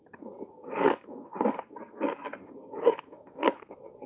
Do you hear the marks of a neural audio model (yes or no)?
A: yes